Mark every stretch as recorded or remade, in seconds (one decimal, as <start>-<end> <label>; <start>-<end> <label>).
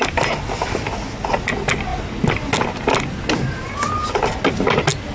0.0-5.1 recorded